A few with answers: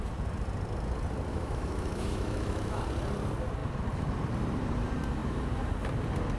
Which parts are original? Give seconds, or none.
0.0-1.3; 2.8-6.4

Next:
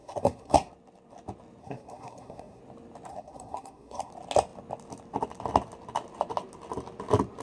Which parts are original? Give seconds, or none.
0.7-1.6; 2.6-3.1; 4.1-7.4

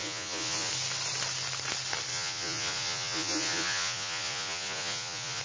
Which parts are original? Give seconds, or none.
0.7-2.1

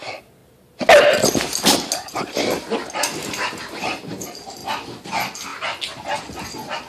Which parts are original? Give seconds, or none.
0.0-6.9

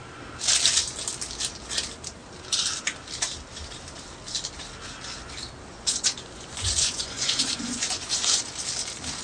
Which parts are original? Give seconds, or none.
0.0-5.7; 8.4-9.2

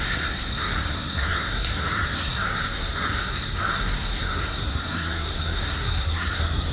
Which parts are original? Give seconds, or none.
none

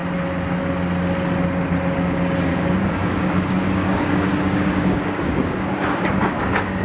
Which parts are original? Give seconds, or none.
0.0-2.5